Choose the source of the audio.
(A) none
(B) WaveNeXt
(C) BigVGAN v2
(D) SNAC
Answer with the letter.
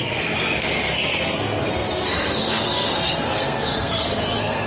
D